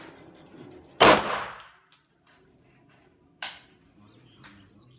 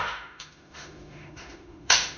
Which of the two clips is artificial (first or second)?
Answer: second